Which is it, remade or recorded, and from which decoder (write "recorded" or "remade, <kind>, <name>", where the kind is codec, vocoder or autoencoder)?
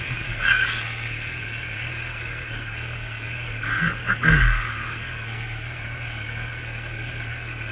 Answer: remade, codec, SNAC